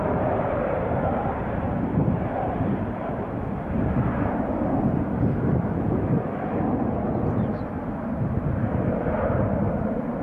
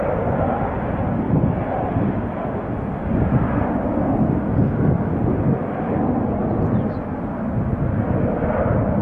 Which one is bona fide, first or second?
second